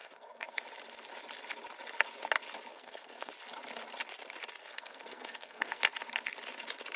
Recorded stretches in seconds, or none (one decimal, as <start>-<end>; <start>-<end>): 0.6-2.7; 3.3-4.6; 5.8-7.0